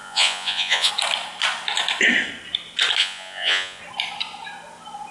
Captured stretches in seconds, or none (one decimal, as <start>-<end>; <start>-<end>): 0.9-3.0; 3.8-5.1